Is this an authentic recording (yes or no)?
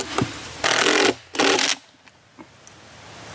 yes